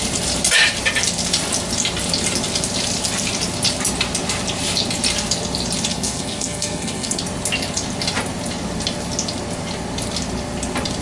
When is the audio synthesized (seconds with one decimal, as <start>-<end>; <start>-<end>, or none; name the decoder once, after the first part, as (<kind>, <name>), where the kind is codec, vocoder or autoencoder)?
5.9-7.2 (codec, SNAC)